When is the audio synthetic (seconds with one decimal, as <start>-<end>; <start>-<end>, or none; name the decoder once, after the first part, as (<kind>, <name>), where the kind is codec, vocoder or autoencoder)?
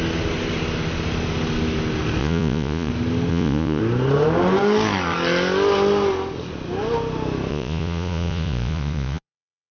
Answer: 2.2-2.9 (vocoder, Vocos); 3.3-3.8; 7.5-9.7